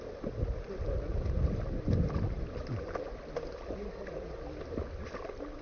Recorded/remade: recorded